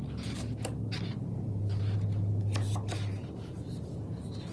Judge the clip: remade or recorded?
recorded